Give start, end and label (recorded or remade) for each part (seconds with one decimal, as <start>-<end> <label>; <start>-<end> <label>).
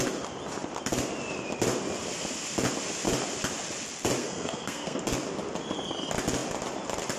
0.0-4.2 recorded; 4.2-5.0 remade; 5.0-7.2 recorded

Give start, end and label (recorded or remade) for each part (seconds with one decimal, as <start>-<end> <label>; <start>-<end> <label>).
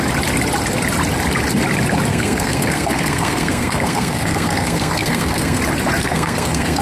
0.0-2.1 recorded; 2.1-5.6 remade; 5.6-6.0 recorded; 6.0-6.8 remade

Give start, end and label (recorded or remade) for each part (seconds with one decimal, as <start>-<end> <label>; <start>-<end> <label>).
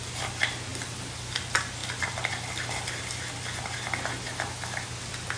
0.0-5.4 recorded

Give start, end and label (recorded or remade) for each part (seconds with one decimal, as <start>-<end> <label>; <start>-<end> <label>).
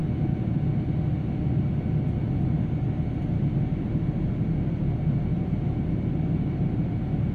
0.0-7.3 recorded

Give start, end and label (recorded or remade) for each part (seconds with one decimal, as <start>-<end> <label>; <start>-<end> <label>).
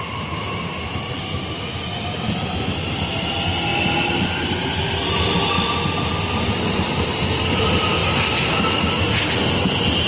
0.0-10.1 recorded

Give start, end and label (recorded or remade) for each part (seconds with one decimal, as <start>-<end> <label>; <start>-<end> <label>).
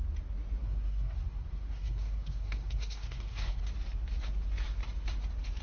0.0-0.6 recorded; 0.6-3.6 remade; 3.6-5.6 recorded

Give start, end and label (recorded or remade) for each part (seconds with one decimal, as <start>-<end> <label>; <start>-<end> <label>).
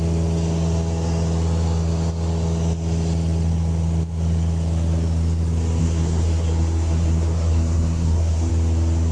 0.0-5.8 recorded; 5.8-8.5 remade; 8.5-9.1 recorded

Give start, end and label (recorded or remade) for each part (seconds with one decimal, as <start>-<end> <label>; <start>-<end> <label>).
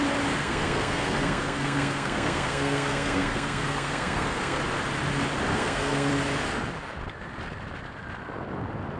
0.0-0.4 recorded; 0.4-4.6 remade; 4.6-5.5 recorded; 5.5-6.1 remade; 6.1-9.0 recorded